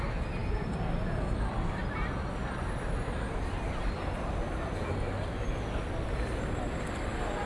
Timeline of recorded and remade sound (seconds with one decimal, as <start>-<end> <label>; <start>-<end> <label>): 0.0-7.5 recorded